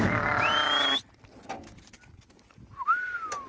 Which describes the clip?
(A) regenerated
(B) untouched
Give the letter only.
B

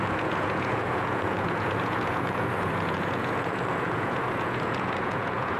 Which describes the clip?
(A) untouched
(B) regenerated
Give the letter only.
B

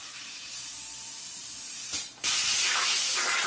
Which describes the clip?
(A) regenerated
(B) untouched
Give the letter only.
B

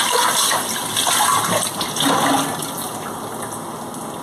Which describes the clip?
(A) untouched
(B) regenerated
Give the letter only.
A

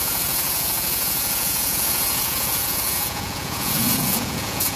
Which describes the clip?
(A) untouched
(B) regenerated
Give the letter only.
B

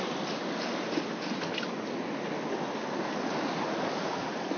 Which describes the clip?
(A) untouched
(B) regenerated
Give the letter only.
A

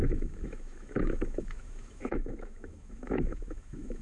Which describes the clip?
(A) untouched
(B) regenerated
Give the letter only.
B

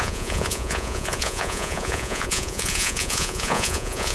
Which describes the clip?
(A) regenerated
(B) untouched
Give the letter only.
A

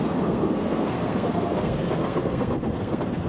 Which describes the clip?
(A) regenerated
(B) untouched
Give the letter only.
A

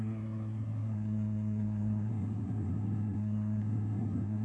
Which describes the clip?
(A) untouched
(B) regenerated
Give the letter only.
B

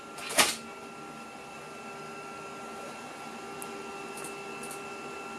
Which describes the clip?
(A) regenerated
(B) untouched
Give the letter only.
B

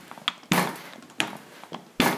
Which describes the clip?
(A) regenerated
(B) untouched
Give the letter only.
B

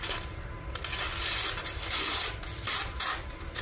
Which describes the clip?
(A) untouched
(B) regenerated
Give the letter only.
A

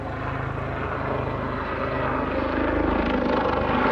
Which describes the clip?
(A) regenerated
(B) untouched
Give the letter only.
B